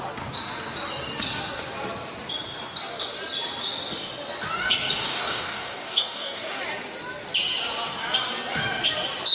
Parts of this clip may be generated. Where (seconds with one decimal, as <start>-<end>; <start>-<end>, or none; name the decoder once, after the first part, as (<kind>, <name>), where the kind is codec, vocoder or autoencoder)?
5.0-6.6 (codec, DAC)